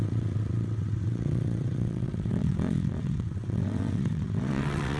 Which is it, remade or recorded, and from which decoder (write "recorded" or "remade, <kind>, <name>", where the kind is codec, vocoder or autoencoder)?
remade, vocoder, WaveNeXt